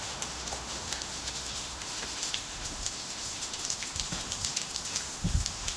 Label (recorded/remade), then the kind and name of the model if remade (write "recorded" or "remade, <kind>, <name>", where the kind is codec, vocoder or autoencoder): remade, autoencoder, DAC-VAE